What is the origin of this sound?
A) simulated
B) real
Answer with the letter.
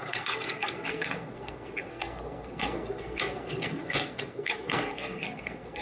A